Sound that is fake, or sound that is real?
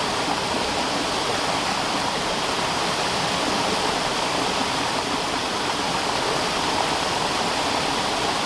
real